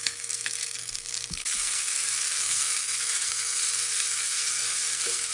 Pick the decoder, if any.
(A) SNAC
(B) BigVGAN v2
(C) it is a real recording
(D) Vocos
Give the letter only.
A